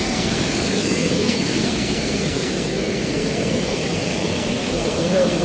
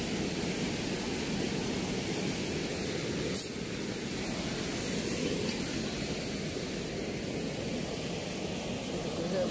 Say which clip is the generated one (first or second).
first